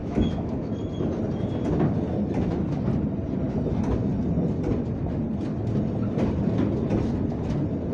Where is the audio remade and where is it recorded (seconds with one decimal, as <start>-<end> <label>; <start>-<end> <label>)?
0.0-0.7 remade; 0.7-7.9 recorded

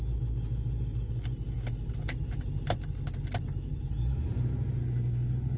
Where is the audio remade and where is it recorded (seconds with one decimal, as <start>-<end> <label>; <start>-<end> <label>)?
0.0-4.8 recorded; 4.8-5.6 remade